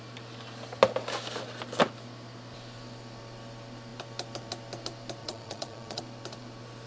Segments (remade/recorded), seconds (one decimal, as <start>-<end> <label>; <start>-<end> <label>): 0.0-5.2 recorded; 5.2-6.0 remade; 6.0-6.9 recorded